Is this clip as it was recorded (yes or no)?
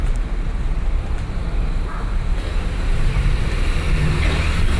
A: no